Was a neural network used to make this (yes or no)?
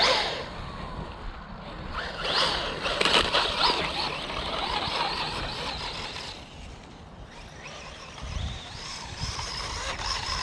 no